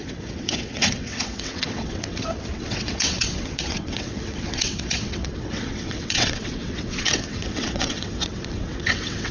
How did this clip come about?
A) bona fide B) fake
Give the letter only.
B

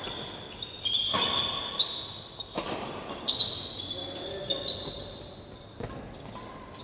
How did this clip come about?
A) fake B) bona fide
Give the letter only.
B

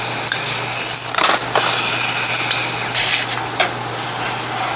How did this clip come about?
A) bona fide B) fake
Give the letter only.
A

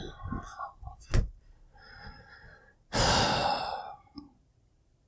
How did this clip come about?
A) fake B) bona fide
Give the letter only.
B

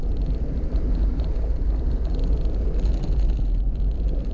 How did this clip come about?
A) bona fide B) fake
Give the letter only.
A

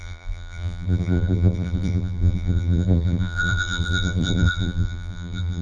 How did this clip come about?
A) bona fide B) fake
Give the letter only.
B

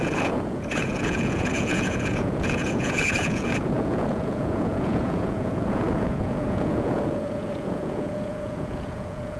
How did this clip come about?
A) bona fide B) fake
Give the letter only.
B